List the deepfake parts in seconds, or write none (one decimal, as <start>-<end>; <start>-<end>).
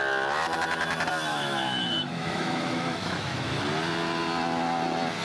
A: 1.3-3.6